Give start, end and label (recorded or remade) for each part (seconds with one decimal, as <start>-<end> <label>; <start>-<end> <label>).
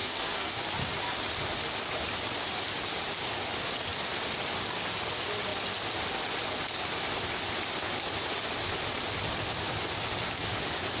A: 0.0-0.6 remade; 0.6-11.0 recorded